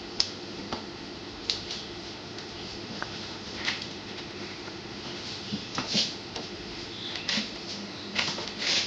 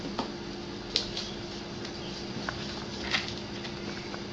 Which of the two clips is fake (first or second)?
first